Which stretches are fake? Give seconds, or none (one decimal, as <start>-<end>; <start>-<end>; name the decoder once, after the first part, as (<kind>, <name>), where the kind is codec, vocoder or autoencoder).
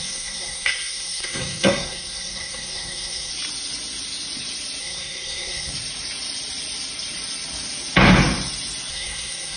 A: 0.0-3.3 (codec, SNAC); 4.8-5.7; 8.9-9.6